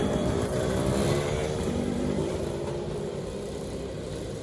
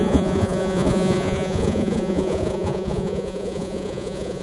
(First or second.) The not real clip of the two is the second